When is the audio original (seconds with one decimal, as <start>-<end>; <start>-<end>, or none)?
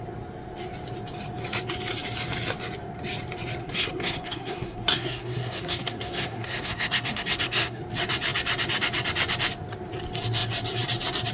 0.0-3.6; 7.8-11.3